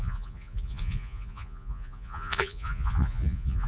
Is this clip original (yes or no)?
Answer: no